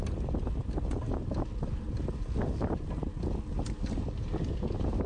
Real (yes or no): yes